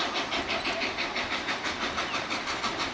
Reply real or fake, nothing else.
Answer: fake